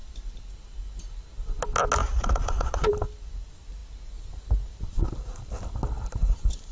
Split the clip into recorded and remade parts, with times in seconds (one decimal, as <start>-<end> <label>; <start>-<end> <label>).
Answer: 0.0-2.0 recorded; 2.0-2.9 remade; 2.9-6.7 recorded